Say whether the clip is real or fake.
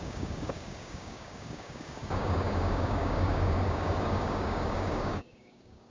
fake